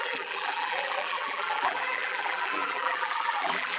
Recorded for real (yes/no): no